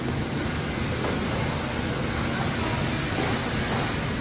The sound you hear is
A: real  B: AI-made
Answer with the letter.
A